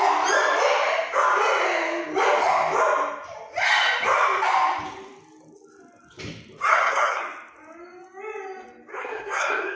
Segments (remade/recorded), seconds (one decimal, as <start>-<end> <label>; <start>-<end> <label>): 0.0-6.7 recorded; 6.7-7.2 remade; 7.2-8.9 recorded; 8.9-9.8 remade